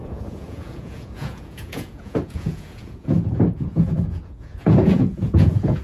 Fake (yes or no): yes